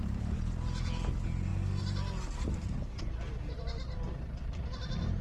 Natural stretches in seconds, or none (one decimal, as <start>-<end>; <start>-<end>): 0.0-5.2